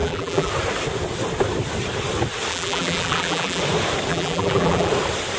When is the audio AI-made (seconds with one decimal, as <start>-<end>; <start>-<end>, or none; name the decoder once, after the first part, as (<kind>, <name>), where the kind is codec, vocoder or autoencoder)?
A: 0.0-0.5 (vocoder, BigVGAN v2); 2.5-3.6; 4.1-4.9